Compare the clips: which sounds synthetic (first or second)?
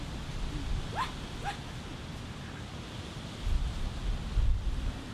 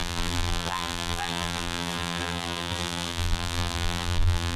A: second